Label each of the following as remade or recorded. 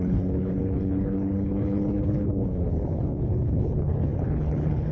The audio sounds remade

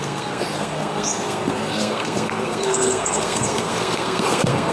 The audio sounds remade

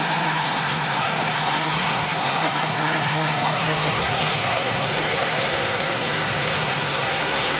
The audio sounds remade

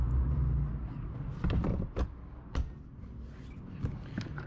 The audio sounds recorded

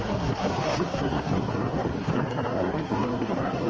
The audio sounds remade